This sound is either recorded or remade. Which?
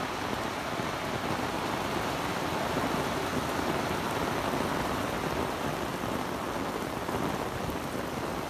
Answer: recorded